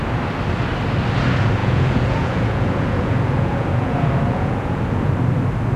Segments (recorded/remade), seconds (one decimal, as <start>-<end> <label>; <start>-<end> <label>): 0.0-1.6 recorded; 1.6-5.1 remade; 5.1-5.8 recorded

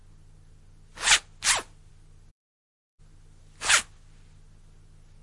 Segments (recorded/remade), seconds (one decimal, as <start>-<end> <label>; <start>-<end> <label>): 0.0-2.3 recorded; 2.3-3.0 remade; 3.0-5.2 recorded

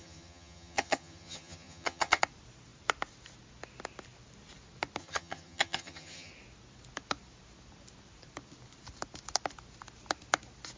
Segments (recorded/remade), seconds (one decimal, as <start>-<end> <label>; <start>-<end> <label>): 0.0-2.2 remade; 2.2-5.0 recorded; 5.0-6.3 remade; 6.3-10.8 recorded

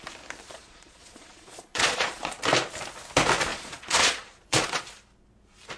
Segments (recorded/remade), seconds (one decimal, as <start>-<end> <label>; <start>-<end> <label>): 0.0-0.5 recorded; 0.5-2.3 remade; 2.3-3.5 recorded; 3.5-4.8 remade; 4.8-5.8 recorded